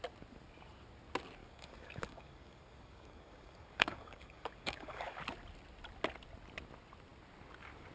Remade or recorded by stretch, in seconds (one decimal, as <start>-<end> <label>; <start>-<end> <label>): 0.0-1.4 recorded; 1.4-5.2 remade; 5.2-7.9 recorded

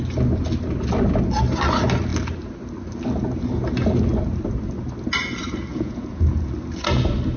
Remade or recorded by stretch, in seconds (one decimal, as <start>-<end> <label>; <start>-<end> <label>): 0.0-5.7 recorded; 5.7-6.5 remade; 6.5-7.4 recorded

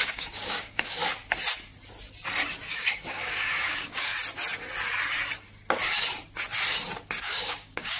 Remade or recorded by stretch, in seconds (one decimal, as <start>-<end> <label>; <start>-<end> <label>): 0.0-1.0 remade; 1.0-2.7 recorded; 2.7-4.1 remade; 4.1-7.2 recorded; 7.2-8.0 remade

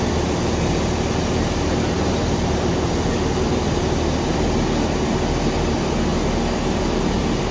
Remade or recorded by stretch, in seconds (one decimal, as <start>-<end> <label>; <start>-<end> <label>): 0.0-7.5 recorded

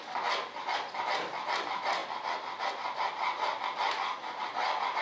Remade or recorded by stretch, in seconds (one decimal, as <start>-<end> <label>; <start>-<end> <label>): 0.0-5.0 recorded

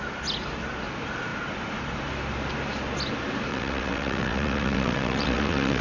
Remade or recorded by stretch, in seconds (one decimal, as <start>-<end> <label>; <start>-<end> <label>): 0.0-3.5 recorded; 3.5-5.8 remade

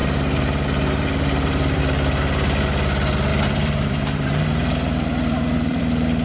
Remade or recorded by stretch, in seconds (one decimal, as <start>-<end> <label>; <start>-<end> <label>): 0.0-1.8 remade; 1.8-3.3 recorded; 3.3-5.8 remade; 5.8-6.2 recorded